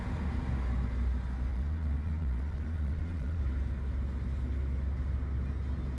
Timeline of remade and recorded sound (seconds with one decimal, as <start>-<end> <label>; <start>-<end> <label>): 0.0-1.5 recorded; 1.5-3.4 remade; 3.4-6.0 recorded